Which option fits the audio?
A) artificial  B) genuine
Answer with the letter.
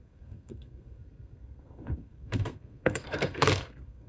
A